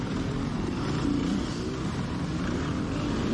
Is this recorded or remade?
recorded